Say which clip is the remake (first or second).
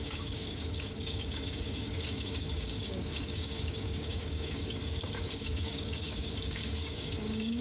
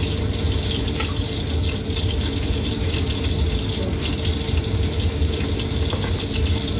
first